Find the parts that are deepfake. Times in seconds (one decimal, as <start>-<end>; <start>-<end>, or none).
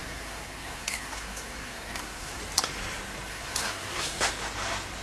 0.0-2.4; 3.3-4.3